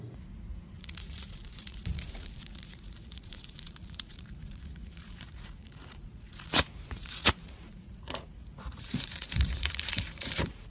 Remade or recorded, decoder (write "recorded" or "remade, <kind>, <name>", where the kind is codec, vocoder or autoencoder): remade, vocoder, Vocos